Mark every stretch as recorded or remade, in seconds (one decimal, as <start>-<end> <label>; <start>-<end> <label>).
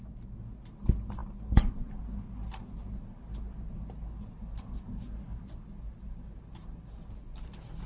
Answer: 0.0-7.9 recorded